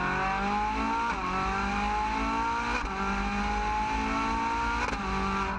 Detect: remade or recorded recorded